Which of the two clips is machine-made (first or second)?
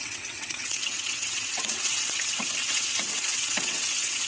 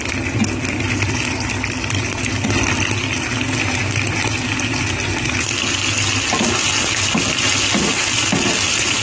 first